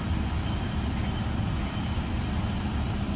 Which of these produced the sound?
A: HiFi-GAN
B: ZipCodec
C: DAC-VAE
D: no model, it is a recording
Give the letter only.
D